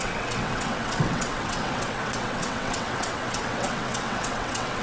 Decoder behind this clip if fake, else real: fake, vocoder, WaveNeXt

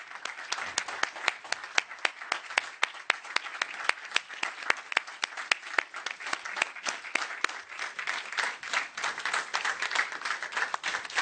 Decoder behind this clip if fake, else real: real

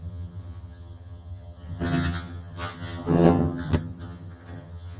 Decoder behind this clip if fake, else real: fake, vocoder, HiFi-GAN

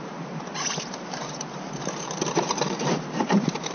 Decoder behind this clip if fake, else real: fake, vocoder, BigVGAN v2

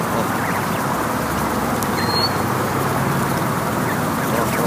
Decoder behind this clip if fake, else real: real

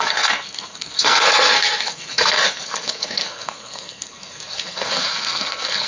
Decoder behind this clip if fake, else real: fake, codec, SNAC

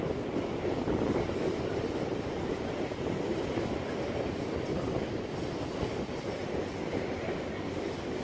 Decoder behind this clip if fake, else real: real